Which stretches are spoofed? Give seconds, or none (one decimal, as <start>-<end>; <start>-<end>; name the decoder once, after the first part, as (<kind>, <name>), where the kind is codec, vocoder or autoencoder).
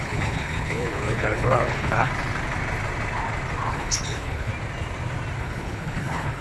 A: 0.0-2.1 (codec, HILCodec); 3.7-4.5; 5.4-6.4